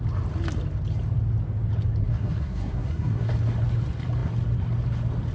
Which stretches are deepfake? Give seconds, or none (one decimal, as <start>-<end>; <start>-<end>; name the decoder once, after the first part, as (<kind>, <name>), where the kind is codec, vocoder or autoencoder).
2.0-3.3 (codec, SNAC)